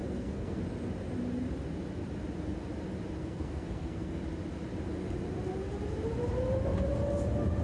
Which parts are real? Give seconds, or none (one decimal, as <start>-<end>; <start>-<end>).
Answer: 0.6-3.2; 4.2-7.6

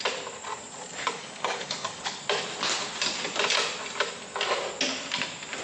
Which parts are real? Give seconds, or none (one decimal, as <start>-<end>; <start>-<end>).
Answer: 0.0-0.9; 2.2-5.6

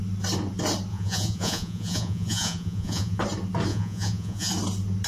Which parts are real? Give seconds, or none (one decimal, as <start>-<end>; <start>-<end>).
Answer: 0.0-0.9; 3.2-3.7; 4.5-5.1

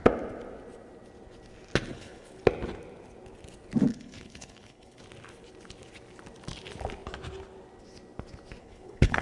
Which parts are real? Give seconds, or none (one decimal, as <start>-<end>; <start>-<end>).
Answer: 0.0-1.9; 2.4-3.9; 5.0-8.6